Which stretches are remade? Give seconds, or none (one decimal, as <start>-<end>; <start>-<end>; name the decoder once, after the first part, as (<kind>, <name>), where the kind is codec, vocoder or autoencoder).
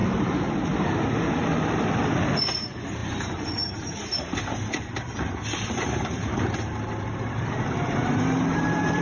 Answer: 0.0-9.0 (vocoder, BigVGAN v2)